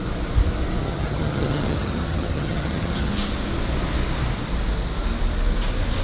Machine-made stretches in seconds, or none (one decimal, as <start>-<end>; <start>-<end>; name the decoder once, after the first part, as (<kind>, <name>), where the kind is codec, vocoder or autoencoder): 0.8-3.1 (vocoder, HiFi-GAN)